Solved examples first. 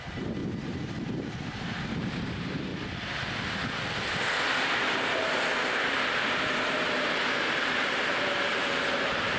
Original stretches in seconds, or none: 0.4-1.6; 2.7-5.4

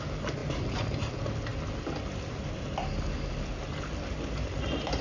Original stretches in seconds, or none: 0.0-5.0

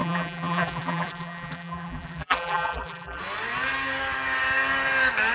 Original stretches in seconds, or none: 3.2-5.3

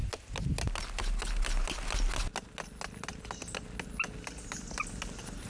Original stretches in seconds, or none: 0.0-5.5